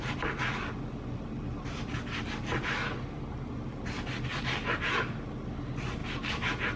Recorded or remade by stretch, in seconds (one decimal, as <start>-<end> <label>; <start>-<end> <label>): 0.0-6.8 recorded